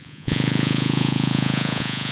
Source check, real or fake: fake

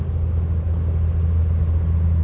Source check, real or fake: real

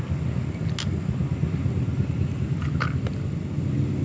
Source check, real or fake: real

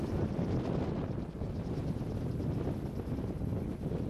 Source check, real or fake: real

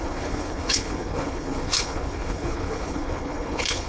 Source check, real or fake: fake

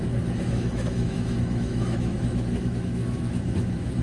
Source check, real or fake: fake